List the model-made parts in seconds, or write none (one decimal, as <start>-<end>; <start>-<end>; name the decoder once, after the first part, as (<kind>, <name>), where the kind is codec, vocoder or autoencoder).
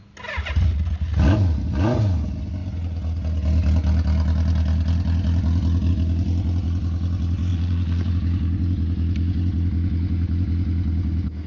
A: 7.5-8.1 (vocoder, Vocos)